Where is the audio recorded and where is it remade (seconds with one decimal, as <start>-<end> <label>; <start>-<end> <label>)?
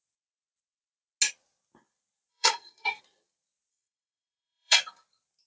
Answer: 0.0-2.3 recorded; 2.3-3.0 remade; 3.0-3.7 recorded; 3.7-4.8 remade; 4.8-5.5 recorded